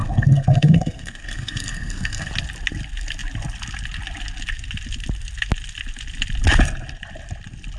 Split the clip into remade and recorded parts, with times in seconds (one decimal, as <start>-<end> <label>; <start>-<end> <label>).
0.0-2.3 remade; 2.3-7.8 recorded